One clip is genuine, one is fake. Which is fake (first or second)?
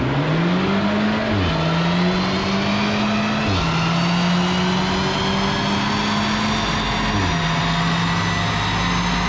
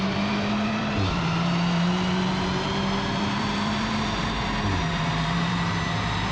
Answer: second